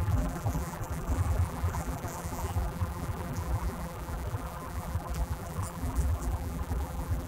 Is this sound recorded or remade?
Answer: remade